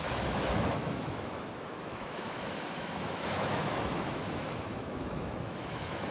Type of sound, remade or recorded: remade